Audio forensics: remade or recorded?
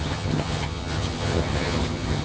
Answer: remade